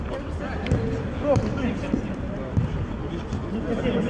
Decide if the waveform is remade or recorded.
recorded